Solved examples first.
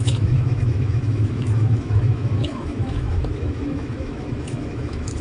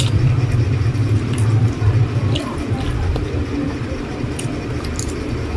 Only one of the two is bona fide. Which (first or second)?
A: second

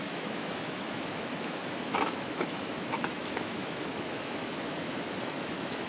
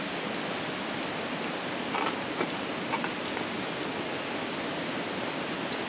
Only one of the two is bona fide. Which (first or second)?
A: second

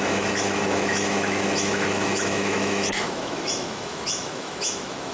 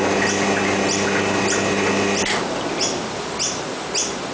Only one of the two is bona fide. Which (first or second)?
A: second